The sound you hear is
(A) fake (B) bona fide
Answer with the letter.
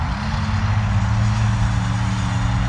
B